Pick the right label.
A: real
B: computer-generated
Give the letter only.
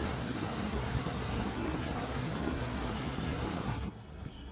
B